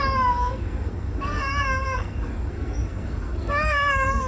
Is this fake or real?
fake